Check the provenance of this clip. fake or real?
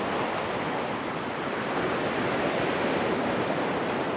real